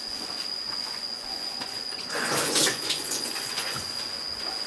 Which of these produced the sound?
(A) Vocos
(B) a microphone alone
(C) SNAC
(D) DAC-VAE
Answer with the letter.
A